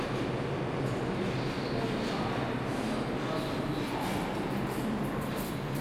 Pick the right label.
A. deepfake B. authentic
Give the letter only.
B